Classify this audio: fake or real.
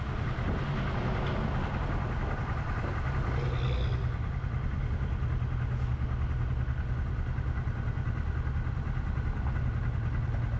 real